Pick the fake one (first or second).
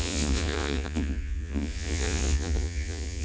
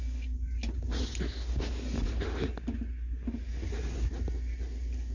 first